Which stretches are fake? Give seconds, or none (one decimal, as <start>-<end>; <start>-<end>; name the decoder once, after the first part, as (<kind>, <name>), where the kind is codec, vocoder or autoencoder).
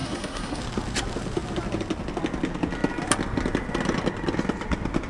0.0-0.6 (codec, SNAC)